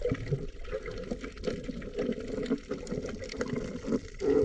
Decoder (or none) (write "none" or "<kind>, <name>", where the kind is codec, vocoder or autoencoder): none